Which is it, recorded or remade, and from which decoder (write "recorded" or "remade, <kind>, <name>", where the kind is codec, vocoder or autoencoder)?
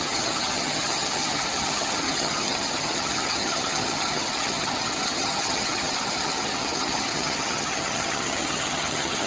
remade, vocoder, HiFi-GAN